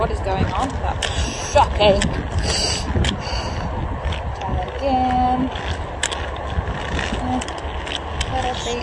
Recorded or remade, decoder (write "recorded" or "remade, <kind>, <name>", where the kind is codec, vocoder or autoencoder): recorded